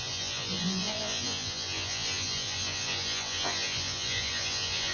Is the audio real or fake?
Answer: fake